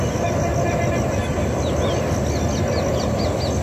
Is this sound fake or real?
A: real